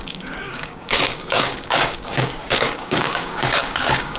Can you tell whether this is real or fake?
fake